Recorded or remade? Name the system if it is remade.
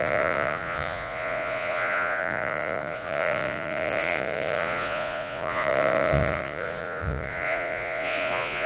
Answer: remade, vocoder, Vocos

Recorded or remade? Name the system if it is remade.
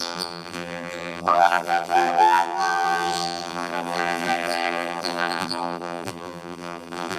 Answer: remade, vocoder, BigVGAN v2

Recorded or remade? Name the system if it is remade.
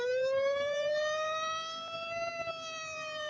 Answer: remade, vocoder, BigVGAN v2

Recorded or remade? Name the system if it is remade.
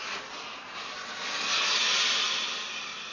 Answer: recorded